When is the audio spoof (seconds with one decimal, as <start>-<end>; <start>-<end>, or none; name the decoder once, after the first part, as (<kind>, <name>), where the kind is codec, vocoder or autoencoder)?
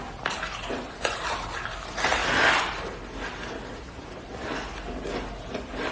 none